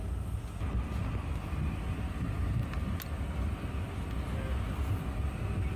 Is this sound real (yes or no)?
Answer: yes